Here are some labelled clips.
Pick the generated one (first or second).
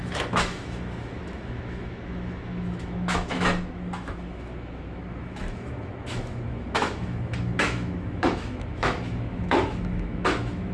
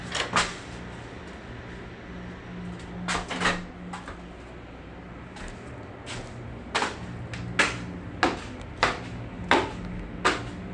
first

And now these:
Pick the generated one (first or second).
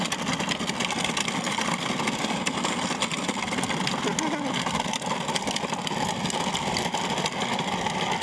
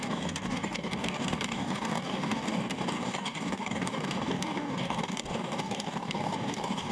second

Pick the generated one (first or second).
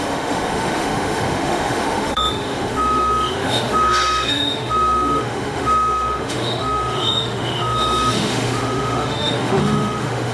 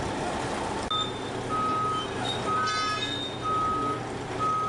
first